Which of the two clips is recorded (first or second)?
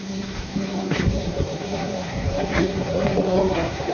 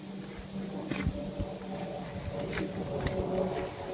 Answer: second